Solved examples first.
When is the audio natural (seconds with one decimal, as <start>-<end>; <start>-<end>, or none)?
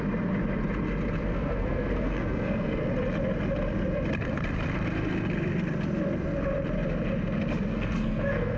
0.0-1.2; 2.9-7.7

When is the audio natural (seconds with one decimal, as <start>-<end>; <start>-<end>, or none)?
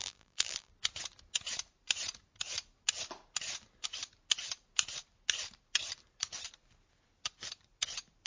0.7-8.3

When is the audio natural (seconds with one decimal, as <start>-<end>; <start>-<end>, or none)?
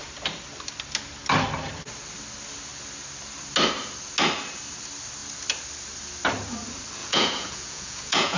0.0-7.0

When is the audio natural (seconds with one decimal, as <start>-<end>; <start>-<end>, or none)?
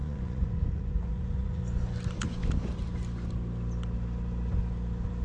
1.6-5.2